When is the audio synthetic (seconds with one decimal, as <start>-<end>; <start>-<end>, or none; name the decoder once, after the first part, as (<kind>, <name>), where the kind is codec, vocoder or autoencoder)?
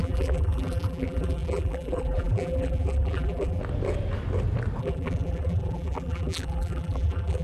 0.0-3.6 (vocoder, BigVGAN v2); 4.8-7.4